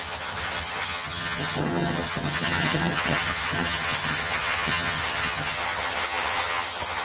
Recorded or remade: remade